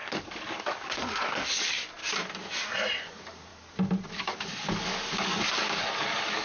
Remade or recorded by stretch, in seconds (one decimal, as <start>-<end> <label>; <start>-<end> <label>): 0.0-2.0 remade; 2.0-3.0 recorded; 3.0-3.5 remade; 3.5-4.1 recorded; 4.1-6.4 remade